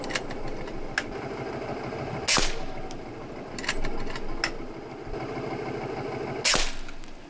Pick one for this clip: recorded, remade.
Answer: recorded